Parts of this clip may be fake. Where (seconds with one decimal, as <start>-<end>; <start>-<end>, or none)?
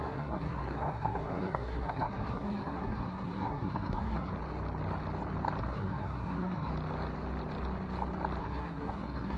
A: 0.0-4.3; 5.6-6.7; 8.4-9.4